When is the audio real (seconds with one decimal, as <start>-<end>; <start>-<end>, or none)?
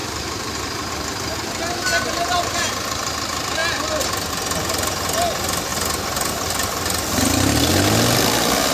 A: 0.9-8.7